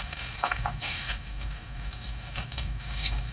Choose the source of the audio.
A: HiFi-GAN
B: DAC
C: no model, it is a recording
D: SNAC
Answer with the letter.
B